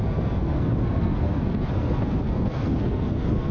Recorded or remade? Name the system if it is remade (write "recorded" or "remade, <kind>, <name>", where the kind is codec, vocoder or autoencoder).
remade, codec, SNAC